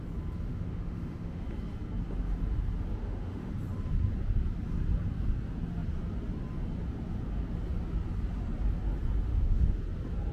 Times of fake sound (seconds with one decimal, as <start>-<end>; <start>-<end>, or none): 0.5-1.4; 3.0-3.5; 9.3-9.8